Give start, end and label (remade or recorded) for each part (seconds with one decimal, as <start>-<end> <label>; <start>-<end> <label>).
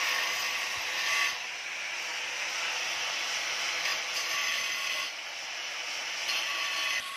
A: 0.0-3.9 recorded; 3.9-5.0 remade; 5.0-6.0 recorded; 6.0-7.2 remade